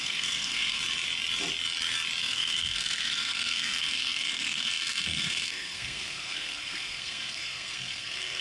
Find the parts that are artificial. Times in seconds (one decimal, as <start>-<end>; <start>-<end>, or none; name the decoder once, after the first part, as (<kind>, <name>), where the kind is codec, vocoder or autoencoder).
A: 0.0-0.8 (codec, SNAC); 2.2-8.4